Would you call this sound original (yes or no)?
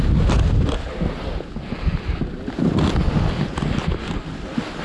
yes